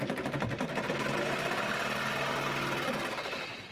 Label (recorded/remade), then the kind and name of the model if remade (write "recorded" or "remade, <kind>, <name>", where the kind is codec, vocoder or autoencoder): recorded